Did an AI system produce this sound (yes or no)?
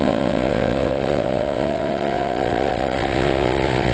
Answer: yes